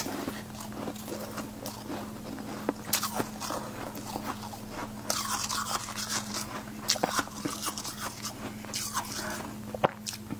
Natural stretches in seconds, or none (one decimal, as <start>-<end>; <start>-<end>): 0.0-10.4